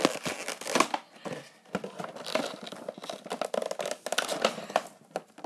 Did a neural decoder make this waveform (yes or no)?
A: no